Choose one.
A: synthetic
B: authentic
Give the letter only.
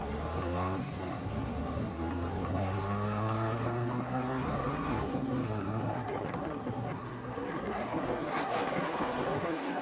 A